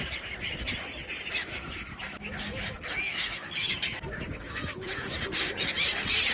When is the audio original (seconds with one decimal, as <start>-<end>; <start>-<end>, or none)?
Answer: 0.0-1.4; 5.2-6.3